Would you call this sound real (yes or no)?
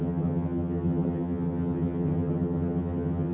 no